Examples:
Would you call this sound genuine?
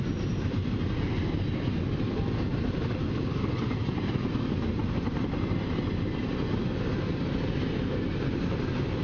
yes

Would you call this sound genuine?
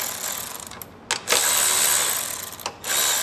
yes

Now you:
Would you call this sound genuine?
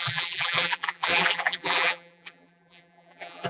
no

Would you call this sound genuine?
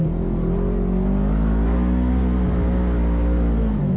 yes